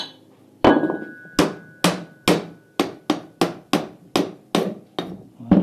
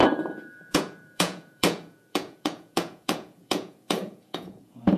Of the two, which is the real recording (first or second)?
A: first